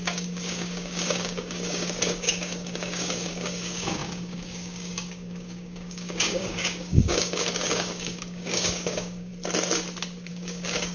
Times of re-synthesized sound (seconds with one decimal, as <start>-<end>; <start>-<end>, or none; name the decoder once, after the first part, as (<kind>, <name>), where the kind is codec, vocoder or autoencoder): 0.0-9.3 (codec, DAC); 10.3-10.9